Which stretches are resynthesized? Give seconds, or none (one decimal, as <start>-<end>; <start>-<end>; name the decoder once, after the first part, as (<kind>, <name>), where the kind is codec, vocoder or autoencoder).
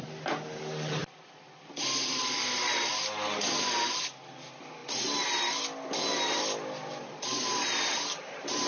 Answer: none